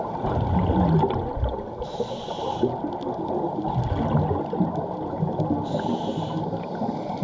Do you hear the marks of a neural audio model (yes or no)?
no